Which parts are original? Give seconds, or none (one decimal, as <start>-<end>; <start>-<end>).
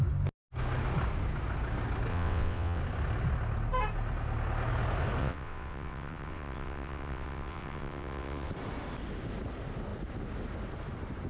0.0-2.1; 2.8-5.2; 8.5-11.3